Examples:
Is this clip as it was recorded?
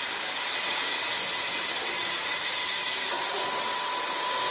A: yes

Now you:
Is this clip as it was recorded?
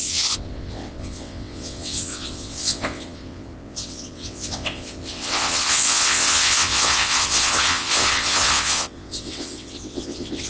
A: no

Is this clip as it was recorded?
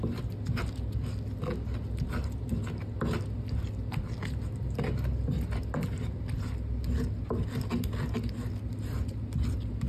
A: yes